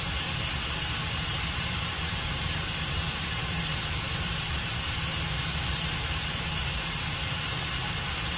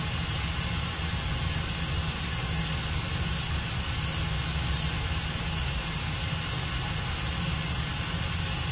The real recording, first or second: second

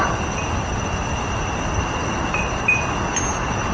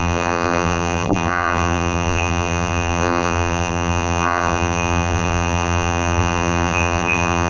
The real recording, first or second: first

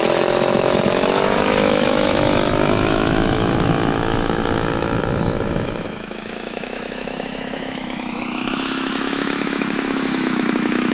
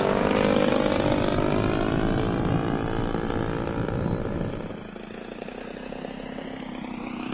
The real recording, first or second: second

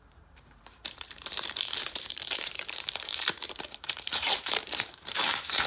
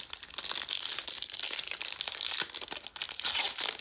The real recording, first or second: second